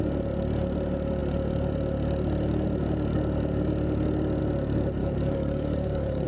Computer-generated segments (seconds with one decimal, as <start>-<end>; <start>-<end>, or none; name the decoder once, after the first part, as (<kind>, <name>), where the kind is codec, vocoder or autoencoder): 5.0-6.3 (codec, DAC)